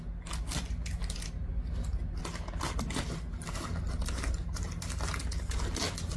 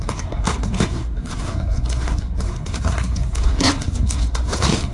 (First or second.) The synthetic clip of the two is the second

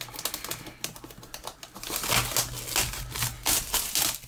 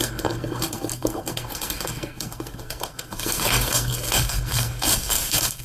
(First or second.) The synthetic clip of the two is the second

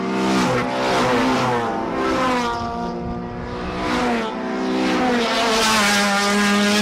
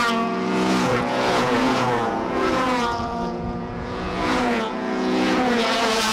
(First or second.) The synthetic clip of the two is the second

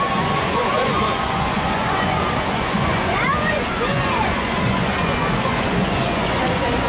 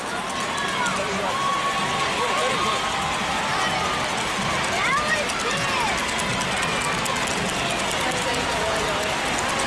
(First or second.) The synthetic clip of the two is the first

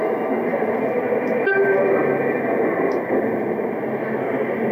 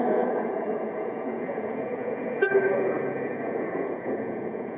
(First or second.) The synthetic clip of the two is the second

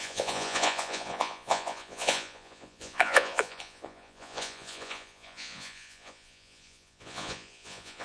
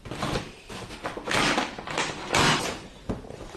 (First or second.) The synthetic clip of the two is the first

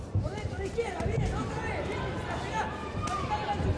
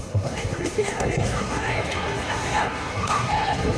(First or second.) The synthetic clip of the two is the second